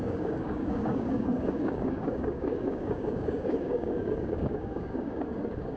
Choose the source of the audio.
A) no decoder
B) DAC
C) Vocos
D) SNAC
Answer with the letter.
B